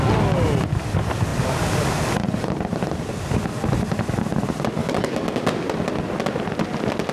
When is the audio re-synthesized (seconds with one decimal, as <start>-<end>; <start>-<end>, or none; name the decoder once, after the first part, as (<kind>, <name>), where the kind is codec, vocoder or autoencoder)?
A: 4.8-5.4 (codec, DAC)